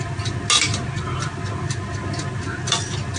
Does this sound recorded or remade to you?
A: recorded